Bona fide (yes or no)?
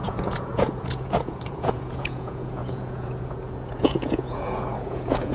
no